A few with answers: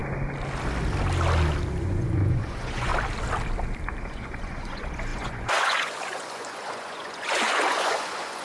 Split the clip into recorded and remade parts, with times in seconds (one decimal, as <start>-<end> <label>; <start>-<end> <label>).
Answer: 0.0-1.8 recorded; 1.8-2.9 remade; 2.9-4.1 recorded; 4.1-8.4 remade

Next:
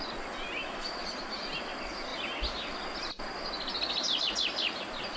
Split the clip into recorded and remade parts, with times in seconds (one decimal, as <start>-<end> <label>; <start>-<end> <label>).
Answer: 0.0-5.2 recorded

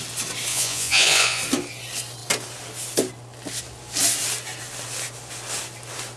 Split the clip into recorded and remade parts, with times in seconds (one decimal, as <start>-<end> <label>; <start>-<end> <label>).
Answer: 0.0-0.5 recorded; 0.5-1.4 remade; 1.4-6.2 recorded

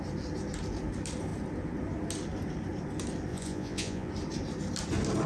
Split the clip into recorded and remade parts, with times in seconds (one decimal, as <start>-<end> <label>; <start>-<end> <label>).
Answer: 0.0-3.3 recorded; 3.3-4.1 remade; 4.1-5.3 recorded

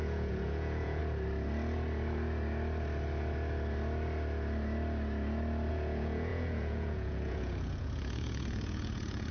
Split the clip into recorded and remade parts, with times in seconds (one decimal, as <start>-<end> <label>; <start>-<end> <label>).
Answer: 0.0-1.0 remade; 1.0-5.7 recorded; 5.7-9.3 remade

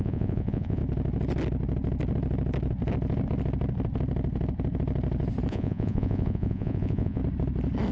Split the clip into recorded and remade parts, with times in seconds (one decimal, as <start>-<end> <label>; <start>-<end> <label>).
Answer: 0.0-0.8 remade; 0.8-5.5 recorded; 5.5-7.2 remade; 7.2-7.9 recorded